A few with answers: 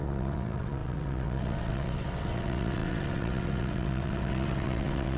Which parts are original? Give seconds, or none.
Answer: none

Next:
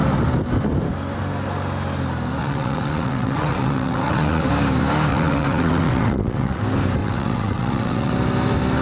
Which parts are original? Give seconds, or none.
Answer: 0.0-2.4; 4.5-5.1; 6.6-7.0; 8.1-8.8

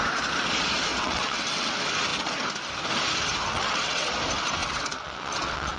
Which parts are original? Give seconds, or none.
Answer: 0.0-0.9; 1.7-3.5; 4.1-4.6